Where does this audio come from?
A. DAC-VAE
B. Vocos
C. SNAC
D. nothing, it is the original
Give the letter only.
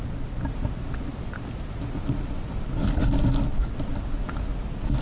D